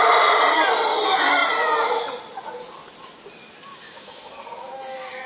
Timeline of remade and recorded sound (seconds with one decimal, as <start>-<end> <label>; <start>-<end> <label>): 0.0-3.7 recorded; 3.7-5.3 remade